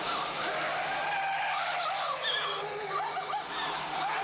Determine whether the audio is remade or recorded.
recorded